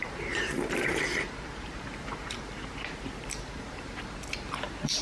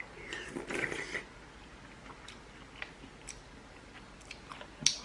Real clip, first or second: second